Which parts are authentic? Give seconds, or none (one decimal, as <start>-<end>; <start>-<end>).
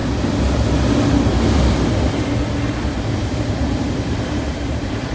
0.0-3.1